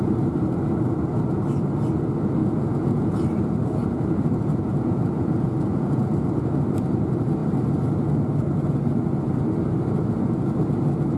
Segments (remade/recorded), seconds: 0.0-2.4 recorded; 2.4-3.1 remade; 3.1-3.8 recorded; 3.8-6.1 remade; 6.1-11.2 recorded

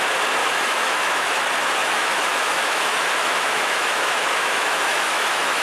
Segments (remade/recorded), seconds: 0.0-0.4 recorded; 0.4-1.4 remade; 1.4-1.8 recorded; 1.8-5.6 remade